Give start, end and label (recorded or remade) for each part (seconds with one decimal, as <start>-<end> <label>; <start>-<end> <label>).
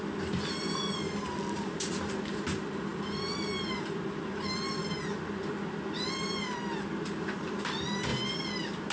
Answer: 0.0-8.9 recorded